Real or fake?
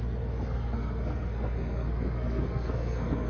fake